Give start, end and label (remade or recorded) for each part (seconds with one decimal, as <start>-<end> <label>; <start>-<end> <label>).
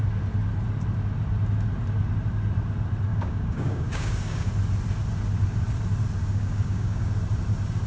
0.0-3.1 recorded; 3.1-4.5 remade; 4.5-6.2 recorded; 6.2-7.1 remade; 7.1-7.9 recorded